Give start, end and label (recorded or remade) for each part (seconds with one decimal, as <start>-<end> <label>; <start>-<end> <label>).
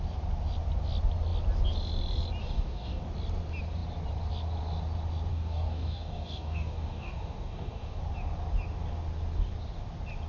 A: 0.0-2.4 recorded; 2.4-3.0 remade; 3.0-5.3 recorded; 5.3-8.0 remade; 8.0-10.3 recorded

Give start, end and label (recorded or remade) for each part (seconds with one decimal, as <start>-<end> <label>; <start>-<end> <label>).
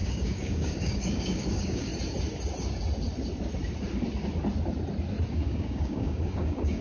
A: 0.0-1.9 remade; 1.9-5.3 recorded; 5.3-6.8 remade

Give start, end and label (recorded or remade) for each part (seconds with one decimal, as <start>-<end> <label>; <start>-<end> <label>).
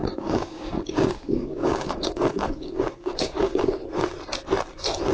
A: 0.0-3.8 remade; 3.8-5.1 recorded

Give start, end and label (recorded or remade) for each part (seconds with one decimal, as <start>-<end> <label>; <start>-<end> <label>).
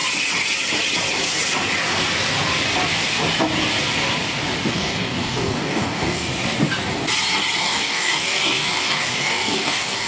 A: 0.0-4.7 recorded; 4.7-6.3 remade; 6.3-7.6 recorded; 7.6-10.1 remade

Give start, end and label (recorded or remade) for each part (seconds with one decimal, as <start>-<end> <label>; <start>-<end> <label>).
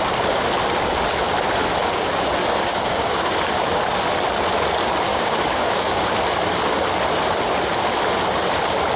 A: 0.0-1.8 recorded; 1.8-2.3 remade; 2.3-2.7 recorded; 2.7-3.3 remade; 3.3-5.1 recorded; 5.1-6.1 remade; 6.1-9.0 recorded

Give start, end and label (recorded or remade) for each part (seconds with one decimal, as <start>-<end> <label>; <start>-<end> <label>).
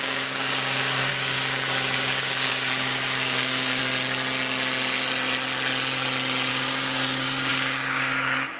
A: 0.0-3.8 remade; 3.8-6.5 recorded; 6.5-8.6 remade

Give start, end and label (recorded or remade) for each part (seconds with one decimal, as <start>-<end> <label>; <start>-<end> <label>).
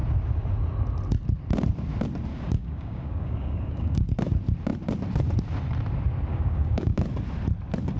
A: 0.0-2.3 recorded; 2.3-4.1 remade; 4.1-6.3 recorded; 6.3-7.0 remade; 7.0-8.0 recorded